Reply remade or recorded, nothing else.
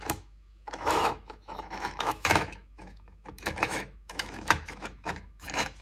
remade